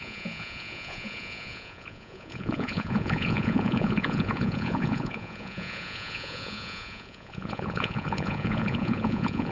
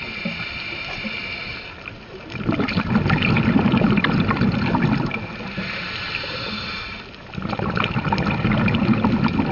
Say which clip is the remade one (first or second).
first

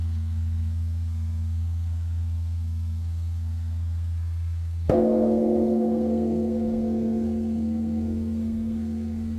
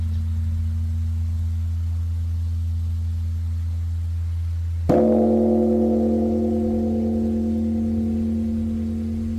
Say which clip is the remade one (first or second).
first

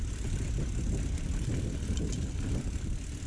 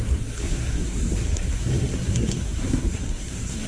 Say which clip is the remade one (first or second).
second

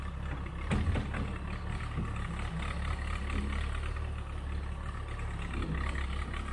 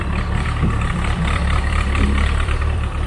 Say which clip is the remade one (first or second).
second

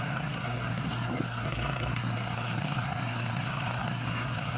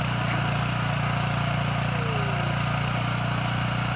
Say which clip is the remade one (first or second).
first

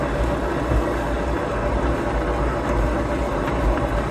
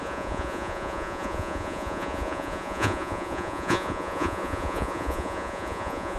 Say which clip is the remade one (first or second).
second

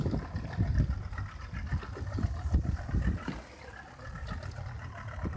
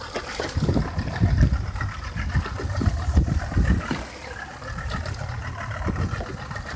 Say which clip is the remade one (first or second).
second